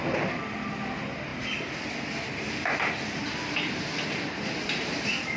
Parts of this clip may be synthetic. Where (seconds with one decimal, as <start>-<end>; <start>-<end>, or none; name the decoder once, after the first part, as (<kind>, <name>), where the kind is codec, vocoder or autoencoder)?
none